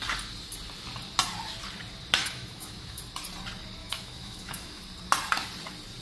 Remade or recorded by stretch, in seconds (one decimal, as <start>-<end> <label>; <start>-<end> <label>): 0.0-2.2 recorded; 2.2-3.0 remade; 3.0-3.8 recorded; 3.8-4.8 remade; 4.8-6.0 recorded